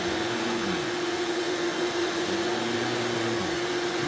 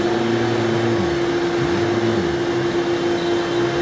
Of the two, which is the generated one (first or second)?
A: first